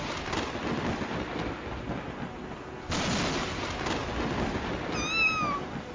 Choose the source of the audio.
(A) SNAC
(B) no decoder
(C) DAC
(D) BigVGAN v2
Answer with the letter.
B